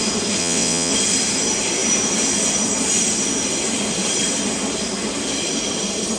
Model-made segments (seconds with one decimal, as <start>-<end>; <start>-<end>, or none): 0.4-0.9